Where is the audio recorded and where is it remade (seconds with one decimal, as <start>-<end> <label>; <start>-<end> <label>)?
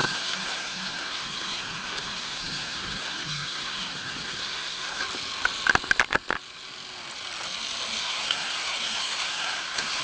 0.0-5.0 remade; 5.0-8.0 recorded; 8.0-10.0 remade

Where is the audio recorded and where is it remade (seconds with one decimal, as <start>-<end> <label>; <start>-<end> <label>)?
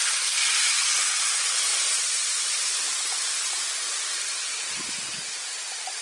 0.0-6.0 recorded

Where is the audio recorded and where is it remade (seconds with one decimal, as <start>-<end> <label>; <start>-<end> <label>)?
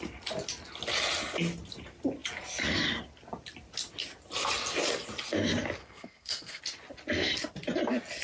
0.0-5.8 recorded; 5.8-6.6 remade; 6.6-8.2 recorded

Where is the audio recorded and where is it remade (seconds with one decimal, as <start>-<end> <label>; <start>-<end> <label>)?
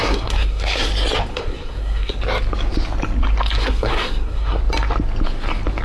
0.0-0.9 remade; 0.9-1.3 recorded; 1.3-2.2 remade; 2.2-3.6 recorded; 3.6-4.6 remade; 4.6-5.8 recorded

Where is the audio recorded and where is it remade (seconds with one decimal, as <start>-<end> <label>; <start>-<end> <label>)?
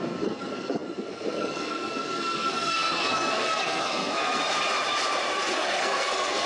0.0-4.4 remade; 4.4-5.3 recorded; 5.3-6.5 remade